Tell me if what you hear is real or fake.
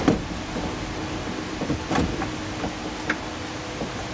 real